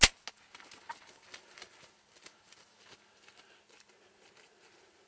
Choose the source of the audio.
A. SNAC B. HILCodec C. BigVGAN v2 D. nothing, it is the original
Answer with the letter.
D